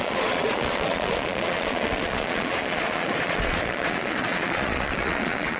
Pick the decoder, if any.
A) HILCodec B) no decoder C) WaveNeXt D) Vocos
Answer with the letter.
D